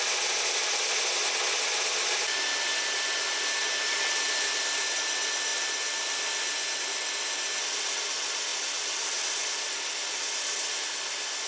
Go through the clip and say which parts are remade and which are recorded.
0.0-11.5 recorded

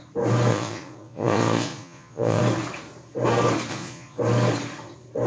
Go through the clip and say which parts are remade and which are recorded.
0.0-0.5 recorded; 0.5-2.4 remade; 2.4-3.7 recorded; 3.7-4.2 remade; 4.2-5.3 recorded

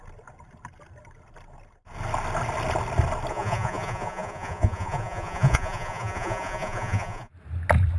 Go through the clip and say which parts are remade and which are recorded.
0.0-3.3 recorded; 3.3-7.3 remade; 7.3-8.0 recorded